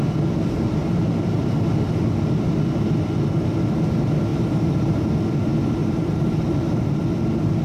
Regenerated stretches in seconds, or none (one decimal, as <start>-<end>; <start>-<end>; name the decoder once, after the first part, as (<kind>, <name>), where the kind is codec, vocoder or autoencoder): 0.8-1.4 (vocoder, BigVGAN v2); 4.3-5.0; 5.8-7.0